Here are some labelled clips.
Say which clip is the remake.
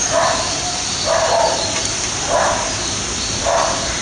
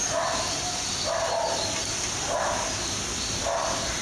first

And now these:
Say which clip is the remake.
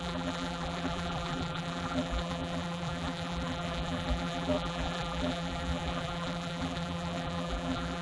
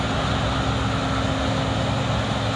first